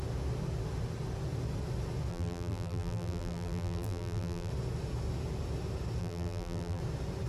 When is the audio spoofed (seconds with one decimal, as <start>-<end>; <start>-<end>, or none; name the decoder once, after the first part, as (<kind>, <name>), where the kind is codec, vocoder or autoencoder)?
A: 2.1-4.5 (vocoder, BigVGAN v2); 6.0-6.8